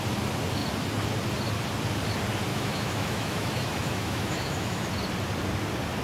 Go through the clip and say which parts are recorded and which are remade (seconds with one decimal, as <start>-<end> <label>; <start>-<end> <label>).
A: 0.0-2.5 recorded; 2.5-4.9 remade; 4.9-6.0 recorded